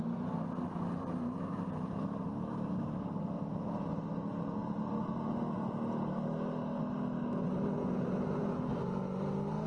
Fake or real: real